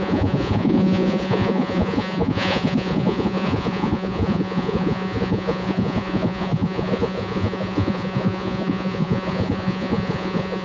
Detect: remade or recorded remade